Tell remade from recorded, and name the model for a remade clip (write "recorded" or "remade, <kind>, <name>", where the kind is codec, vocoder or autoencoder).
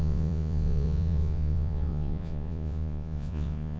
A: remade, vocoder, Vocos